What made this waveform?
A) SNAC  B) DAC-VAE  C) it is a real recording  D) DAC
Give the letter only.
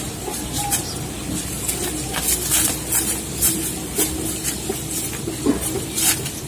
C